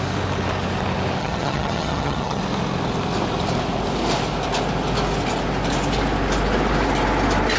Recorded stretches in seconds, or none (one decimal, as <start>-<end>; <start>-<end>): 0.0-1.2; 2.4-7.6

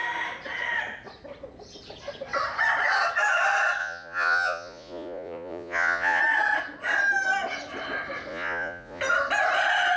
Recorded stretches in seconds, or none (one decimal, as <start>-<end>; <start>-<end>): 0.0-3.8; 6.2-8.3; 9.0-10.0